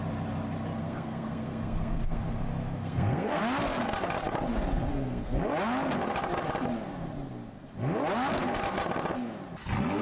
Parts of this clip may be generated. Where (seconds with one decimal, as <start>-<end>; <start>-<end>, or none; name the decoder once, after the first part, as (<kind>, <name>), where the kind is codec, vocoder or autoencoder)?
0.8-3.4 (codec, SNAC); 4.9-5.4